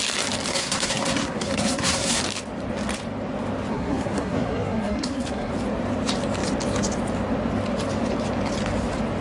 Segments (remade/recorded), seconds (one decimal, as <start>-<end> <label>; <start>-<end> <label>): 0.0-0.5 recorded; 0.5-2.2 remade; 2.2-3.7 recorded; 3.7-5.5 remade; 5.5-9.2 recorded